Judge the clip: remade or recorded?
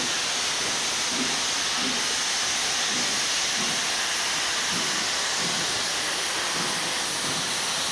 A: recorded